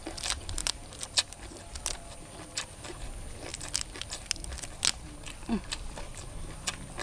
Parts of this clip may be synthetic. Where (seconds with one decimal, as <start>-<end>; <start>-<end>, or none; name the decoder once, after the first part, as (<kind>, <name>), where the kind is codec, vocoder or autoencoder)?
none